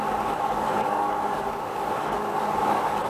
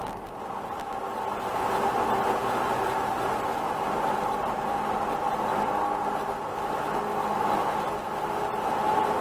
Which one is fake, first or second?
first